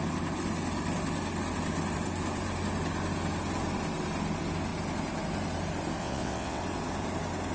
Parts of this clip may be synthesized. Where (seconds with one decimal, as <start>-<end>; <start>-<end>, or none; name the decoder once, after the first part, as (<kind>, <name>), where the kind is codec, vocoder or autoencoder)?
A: 6.0-6.6 (vocoder, WaveNeXt)